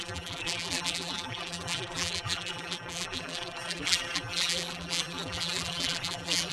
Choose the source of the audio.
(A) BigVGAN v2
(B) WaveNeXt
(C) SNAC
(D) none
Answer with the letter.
A